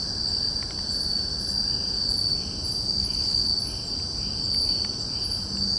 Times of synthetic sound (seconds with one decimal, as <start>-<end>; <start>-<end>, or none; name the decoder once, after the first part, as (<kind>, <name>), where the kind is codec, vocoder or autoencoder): 3.0-3.5 (codec, HILCodec)